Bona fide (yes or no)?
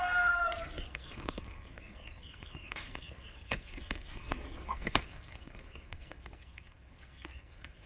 no